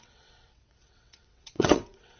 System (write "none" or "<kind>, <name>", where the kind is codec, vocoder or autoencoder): vocoder, WaveNeXt